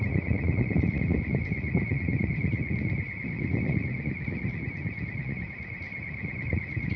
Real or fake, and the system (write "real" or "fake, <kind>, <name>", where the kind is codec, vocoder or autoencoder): fake, vocoder, Vocos